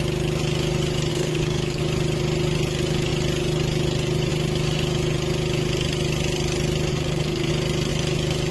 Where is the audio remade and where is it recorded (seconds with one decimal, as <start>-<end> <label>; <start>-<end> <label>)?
0.0-1.1 recorded; 1.1-1.8 remade; 1.8-6.9 recorded; 6.9-7.5 remade; 7.5-8.5 recorded